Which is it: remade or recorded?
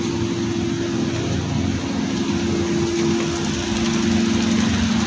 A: recorded